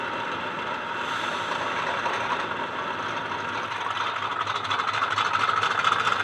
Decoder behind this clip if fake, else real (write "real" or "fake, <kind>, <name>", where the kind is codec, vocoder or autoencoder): real